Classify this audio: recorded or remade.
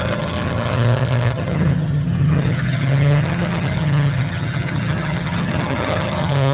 remade